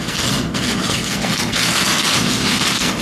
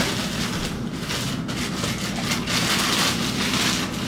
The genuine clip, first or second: second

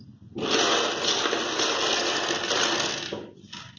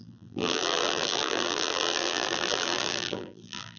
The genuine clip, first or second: first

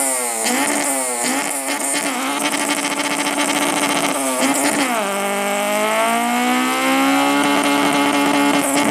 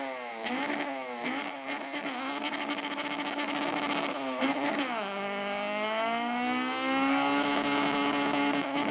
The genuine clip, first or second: first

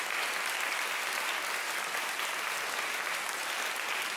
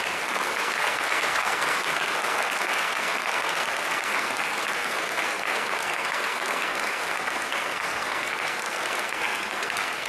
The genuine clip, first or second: first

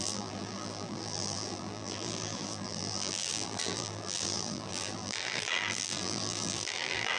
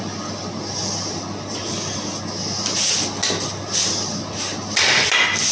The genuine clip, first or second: second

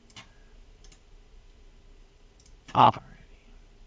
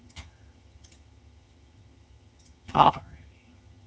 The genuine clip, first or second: first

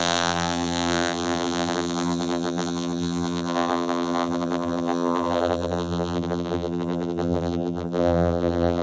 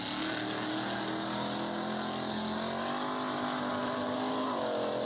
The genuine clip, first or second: second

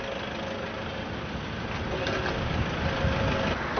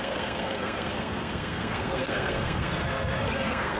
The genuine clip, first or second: first